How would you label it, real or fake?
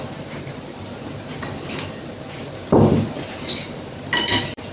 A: fake